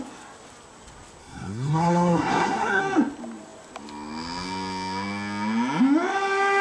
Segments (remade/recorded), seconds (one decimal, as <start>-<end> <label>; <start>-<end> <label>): 0.0-1.2 recorded; 1.2-2.8 remade; 2.8-6.6 recorded